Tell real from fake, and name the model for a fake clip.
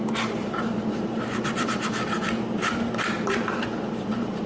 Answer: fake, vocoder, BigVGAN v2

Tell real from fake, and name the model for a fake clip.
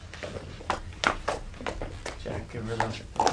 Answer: real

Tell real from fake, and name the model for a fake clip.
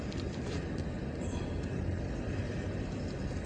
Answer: real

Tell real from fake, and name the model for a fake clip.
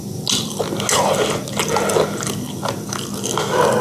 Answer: real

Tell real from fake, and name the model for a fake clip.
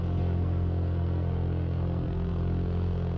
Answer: fake, codec, SNAC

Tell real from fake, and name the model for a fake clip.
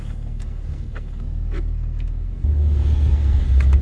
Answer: fake, codec, SNAC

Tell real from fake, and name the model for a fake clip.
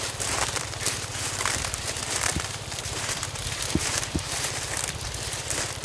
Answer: fake, vocoder, BigVGAN v2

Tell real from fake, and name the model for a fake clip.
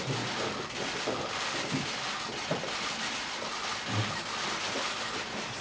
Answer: real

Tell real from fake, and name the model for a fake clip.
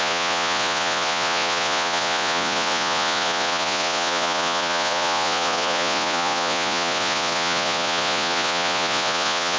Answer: fake, vocoder, Vocos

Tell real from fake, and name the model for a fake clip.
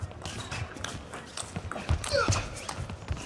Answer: real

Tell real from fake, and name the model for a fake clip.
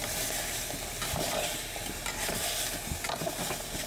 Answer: real